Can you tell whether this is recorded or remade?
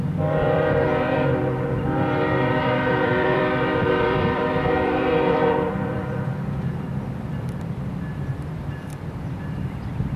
remade